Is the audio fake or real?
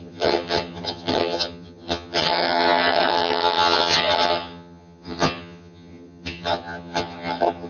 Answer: fake